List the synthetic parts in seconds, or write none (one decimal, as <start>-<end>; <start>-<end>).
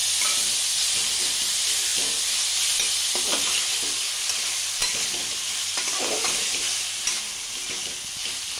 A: 4.8-7.9